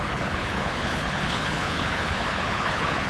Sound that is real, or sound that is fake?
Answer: fake